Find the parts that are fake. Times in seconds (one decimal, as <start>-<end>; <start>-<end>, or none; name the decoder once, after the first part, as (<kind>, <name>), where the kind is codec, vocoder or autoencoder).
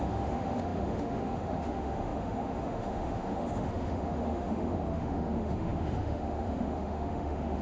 0.0-7.6 (autoencoder, DAC-VAE)